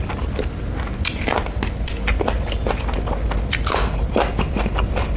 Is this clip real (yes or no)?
yes